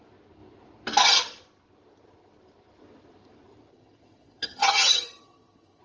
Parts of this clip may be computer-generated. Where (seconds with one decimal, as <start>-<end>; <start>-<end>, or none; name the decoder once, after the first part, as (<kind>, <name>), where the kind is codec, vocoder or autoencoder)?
3.7-5.8 (vocoder, HiFi-GAN)